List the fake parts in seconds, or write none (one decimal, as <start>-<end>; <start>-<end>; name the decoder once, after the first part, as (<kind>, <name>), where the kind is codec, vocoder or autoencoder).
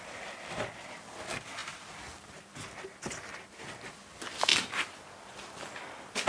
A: none